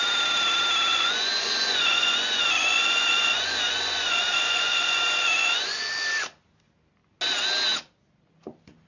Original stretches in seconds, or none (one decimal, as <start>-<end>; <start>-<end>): 0.0-0.9; 5.8-8.9